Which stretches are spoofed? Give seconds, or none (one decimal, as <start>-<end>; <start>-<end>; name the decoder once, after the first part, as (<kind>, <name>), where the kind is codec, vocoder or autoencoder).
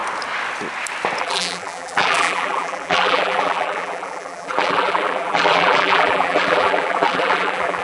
1.2-7.8 (vocoder, BigVGAN v2)